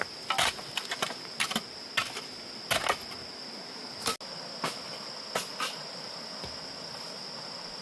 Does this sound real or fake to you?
real